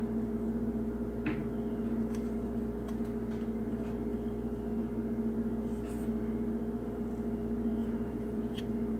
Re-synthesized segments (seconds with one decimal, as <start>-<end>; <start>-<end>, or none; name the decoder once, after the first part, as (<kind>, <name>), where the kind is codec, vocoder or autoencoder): 7.8-8.6 (vocoder, Vocos)